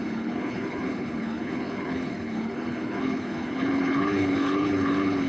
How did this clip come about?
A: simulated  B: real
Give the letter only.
A